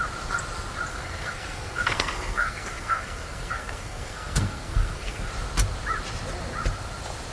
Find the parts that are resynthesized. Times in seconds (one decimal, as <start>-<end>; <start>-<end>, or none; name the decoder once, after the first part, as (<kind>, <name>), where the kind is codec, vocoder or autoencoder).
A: 0.9-5.3 (codec, SNAC)